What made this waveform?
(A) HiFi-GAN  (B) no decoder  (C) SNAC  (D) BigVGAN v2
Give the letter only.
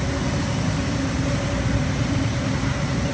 D